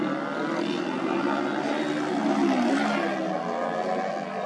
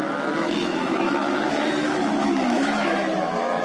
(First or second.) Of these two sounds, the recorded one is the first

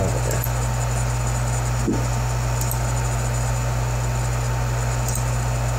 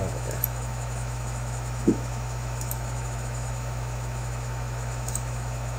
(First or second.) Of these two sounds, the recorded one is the first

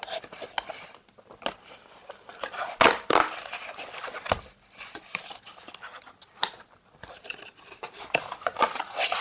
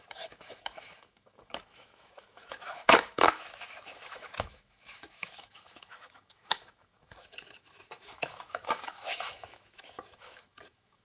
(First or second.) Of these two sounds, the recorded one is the first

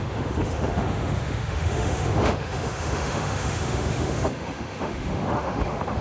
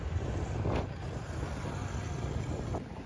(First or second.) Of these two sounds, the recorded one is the second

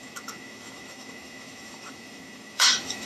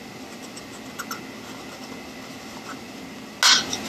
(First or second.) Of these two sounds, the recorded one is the second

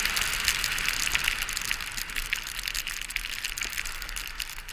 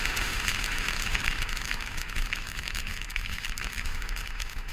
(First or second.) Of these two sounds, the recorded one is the first